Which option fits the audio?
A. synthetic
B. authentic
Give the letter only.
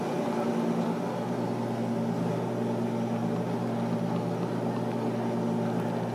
B